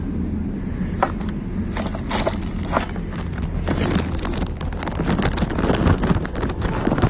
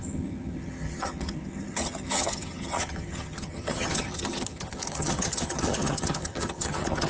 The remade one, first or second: second